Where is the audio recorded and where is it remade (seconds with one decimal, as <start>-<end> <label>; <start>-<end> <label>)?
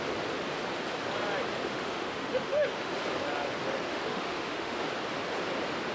0.0-1.6 recorded; 1.6-2.9 remade; 2.9-3.9 recorded; 3.9-4.8 remade; 4.8-5.9 recorded